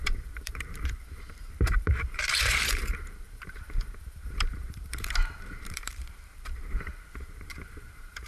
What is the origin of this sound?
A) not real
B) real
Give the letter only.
A